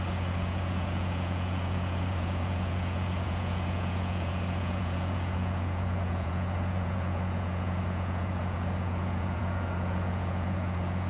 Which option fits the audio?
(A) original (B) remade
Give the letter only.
B